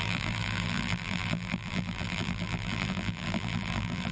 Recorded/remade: remade